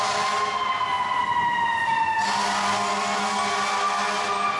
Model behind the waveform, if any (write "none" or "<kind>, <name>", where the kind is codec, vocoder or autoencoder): none